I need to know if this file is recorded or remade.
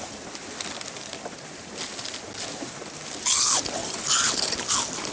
recorded